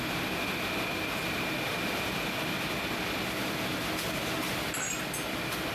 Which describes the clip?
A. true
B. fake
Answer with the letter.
A